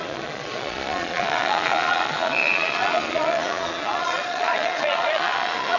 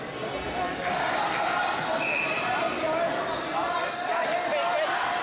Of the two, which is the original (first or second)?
second